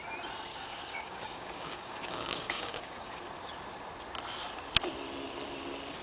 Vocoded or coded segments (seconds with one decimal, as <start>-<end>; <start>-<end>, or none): 0.5-3.2

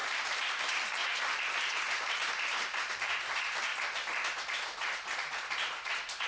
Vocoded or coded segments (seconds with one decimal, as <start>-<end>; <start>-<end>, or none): 0.5-1.0; 2.8-3.7; 5.2-6.3

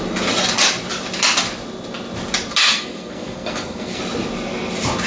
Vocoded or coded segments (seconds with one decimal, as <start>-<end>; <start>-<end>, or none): 2.7-4.0

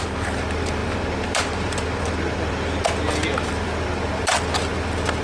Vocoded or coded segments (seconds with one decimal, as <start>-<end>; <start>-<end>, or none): none